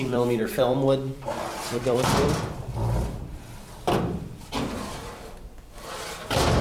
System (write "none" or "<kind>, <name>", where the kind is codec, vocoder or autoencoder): vocoder, BigVGAN v2